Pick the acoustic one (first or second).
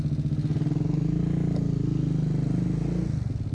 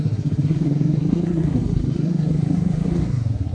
first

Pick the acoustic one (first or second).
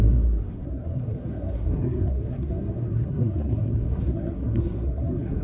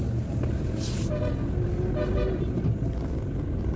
second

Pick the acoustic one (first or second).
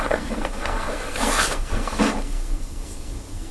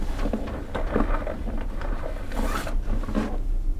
second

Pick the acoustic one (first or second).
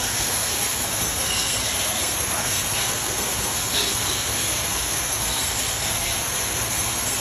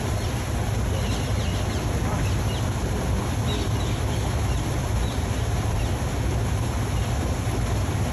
second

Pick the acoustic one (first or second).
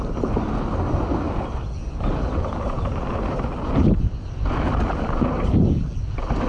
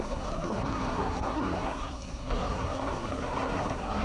first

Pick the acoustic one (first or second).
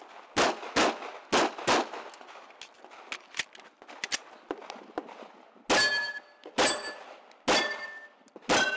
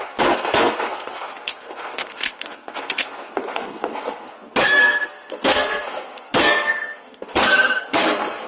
first